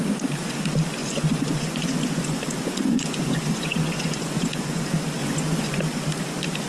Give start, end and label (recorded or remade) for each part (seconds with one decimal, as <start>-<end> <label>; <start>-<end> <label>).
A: 0.0-1.0 recorded; 1.0-4.8 remade; 4.8-5.2 recorded; 5.2-5.8 remade; 5.8-6.7 recorded